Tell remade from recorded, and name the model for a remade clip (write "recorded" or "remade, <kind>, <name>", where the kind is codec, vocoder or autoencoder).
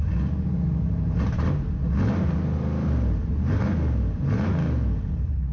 recorded